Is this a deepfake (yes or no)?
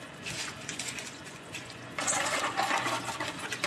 yes